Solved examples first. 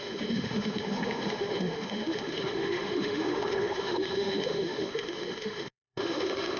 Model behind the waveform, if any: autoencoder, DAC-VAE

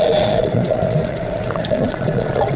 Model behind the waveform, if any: vocoder, Vocos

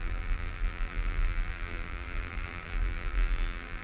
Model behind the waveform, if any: vocoder, BigVGAN v2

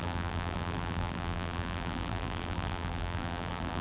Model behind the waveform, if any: vocoder, BigVGAN v2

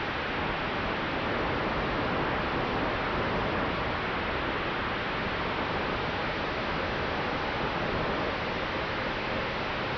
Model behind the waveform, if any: none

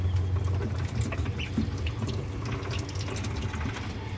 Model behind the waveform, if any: none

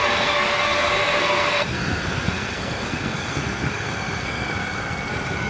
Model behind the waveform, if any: codec, SNAC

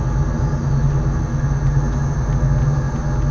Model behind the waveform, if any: none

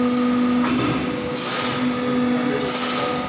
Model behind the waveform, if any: none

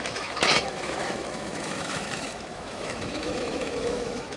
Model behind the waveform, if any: autoencoder, DAC-VAE